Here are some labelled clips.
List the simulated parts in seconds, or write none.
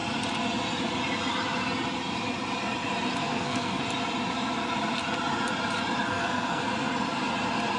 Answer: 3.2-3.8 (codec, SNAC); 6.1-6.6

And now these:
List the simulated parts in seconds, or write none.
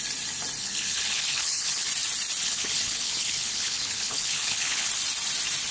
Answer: 0.6-1.9 (codec, HILCodec); 2.4-4.9